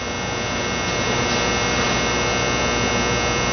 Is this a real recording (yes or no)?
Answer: yes